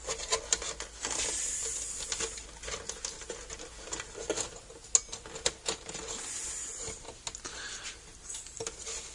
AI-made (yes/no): no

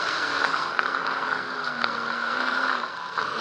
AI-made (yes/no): yes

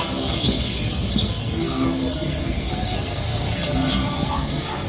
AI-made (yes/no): yes